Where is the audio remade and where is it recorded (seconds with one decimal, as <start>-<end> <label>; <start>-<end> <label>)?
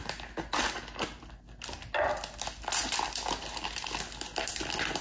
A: 0.0-5.0 recorded